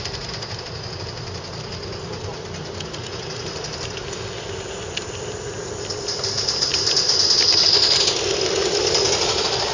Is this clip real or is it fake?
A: real